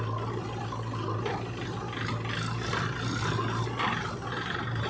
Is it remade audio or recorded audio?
recorded